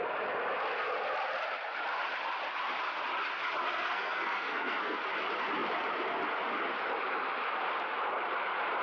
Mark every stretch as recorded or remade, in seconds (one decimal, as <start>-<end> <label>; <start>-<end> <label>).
0.0-3.6 recorded; 3.6-5.0 remade; 5.0-8.8 recorded